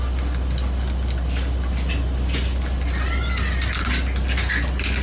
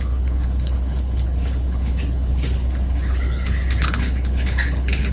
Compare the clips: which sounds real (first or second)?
first